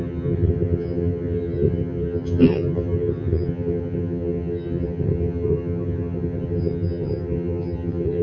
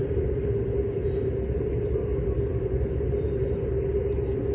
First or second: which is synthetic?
first